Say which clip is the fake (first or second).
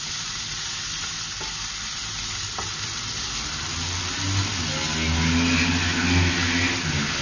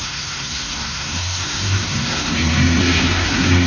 second